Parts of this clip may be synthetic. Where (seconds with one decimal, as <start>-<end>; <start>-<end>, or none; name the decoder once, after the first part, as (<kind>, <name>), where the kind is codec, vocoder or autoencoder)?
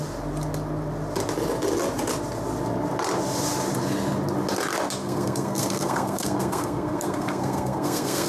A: 5.0-8.3 (codec, SNAC)